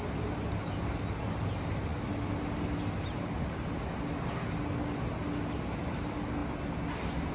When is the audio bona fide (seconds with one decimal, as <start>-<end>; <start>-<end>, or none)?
0.0-7.3